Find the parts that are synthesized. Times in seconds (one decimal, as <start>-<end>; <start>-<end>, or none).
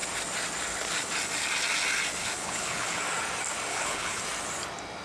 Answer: 2.2-3.0; 3.7-4.2